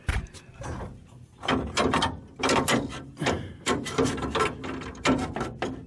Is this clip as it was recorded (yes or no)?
yes